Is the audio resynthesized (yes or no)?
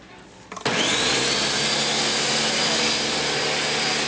no